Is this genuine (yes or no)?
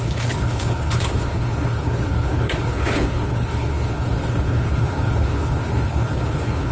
no